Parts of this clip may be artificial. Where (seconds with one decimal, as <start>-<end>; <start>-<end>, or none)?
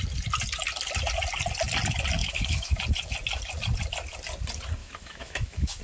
2.2-2.8; 4.8-5.8